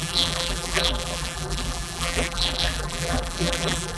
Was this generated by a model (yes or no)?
yes